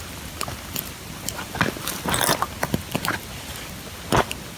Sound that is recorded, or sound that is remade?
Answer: recorded